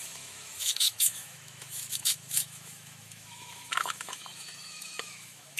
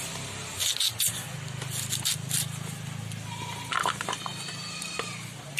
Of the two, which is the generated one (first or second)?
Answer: first